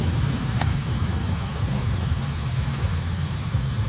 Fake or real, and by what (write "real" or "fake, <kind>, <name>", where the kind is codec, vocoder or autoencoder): fake, autoencoder, DAC-VAE